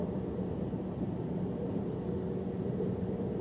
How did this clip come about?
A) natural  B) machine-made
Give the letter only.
A